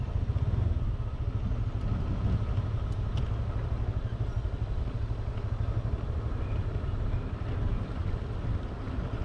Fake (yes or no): no